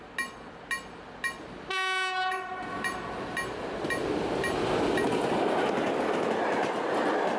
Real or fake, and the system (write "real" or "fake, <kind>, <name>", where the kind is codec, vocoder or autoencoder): real